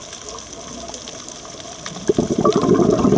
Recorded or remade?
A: recorded